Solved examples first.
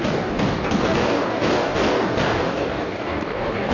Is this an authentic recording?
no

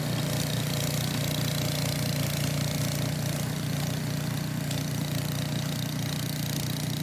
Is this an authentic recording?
yes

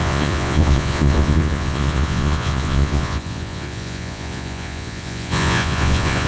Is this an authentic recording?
no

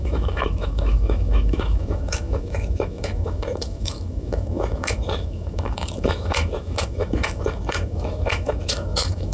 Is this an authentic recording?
no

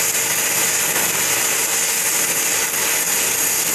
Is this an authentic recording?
yes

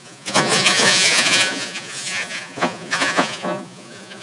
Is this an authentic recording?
no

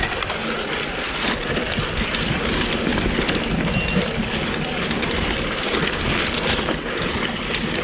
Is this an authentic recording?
yes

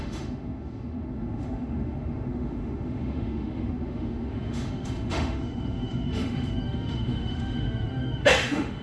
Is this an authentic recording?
no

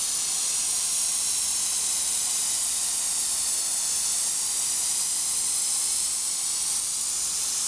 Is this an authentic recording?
yes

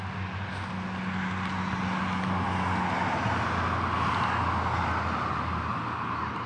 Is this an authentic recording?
yes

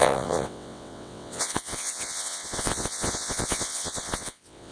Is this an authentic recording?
no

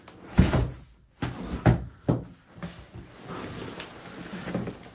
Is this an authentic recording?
yes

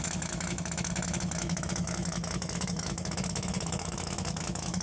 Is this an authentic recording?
no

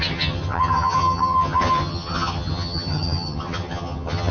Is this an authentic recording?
no